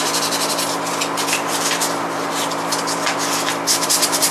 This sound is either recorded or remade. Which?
recorded